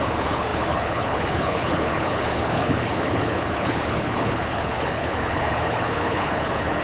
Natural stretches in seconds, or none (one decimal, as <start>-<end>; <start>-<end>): none